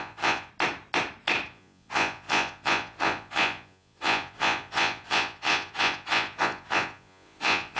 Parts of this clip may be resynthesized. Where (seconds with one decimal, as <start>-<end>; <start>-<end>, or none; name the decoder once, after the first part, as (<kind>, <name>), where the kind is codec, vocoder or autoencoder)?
0.0-0.5 (vocoder, Vocos); 1.5-7.8